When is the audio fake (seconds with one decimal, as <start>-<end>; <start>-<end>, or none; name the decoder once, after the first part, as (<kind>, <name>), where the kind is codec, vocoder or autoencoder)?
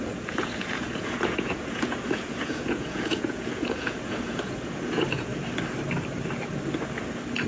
0.0-5.3 (vocoder, Vocos)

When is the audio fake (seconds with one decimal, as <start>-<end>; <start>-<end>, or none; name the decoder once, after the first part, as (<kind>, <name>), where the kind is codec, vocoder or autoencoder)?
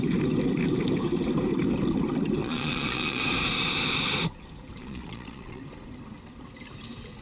2.4-3.2 (vocoder, Vocos); 4.8-5.6